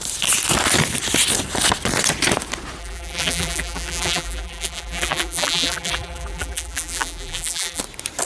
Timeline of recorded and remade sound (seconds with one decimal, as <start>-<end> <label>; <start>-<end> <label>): 0.0-2.8 recorded; 2.8-7.8 remade; 7.8-8.3 recorded